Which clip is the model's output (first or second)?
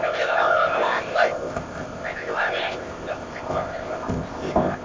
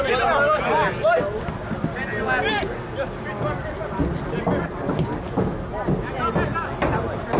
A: first